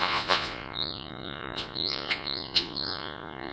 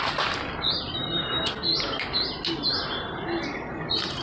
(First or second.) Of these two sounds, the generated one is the first